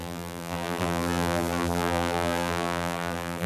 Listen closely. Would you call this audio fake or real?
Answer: fake